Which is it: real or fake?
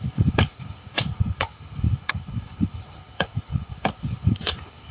fake